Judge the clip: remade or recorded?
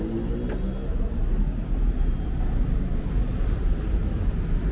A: recorded